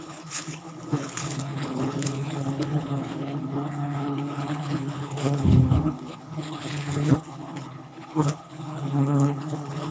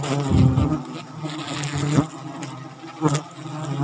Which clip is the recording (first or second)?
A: second